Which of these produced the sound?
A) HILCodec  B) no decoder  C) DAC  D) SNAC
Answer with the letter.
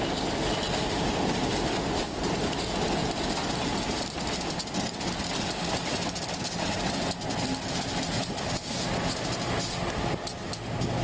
B